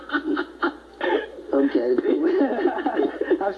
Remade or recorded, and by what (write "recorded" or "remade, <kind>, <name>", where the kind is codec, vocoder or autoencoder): recorded